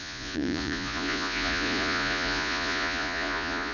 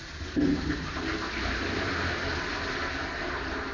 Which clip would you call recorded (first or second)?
second